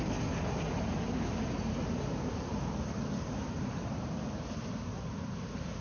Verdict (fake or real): real